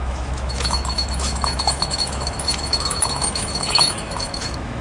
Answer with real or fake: fake